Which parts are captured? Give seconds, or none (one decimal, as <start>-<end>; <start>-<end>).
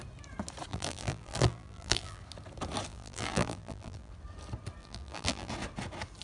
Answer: 0.0-0.7; 2.2-2.9; 4.1-4.8; 5.5-6.2